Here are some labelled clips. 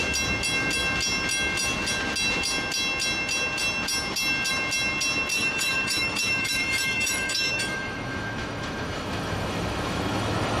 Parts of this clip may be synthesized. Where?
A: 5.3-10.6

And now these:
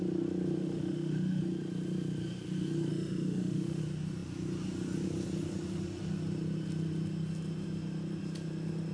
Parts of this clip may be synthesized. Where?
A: 0.6-1.4; 2.9-3.8

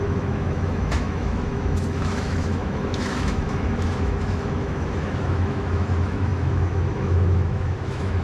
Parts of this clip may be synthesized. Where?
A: 0.0-8.2